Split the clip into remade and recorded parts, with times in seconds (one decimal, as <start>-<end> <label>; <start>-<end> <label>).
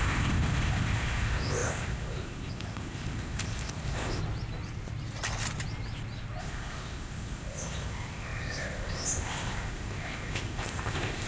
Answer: 0.0-4.2 remade; 4.2-6.4 recorded; 6.4-11.3 remade